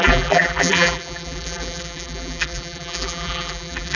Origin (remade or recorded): remade